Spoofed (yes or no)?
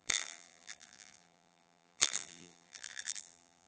yes